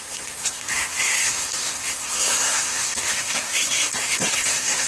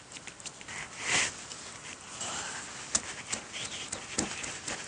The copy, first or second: first